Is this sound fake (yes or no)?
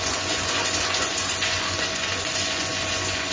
yes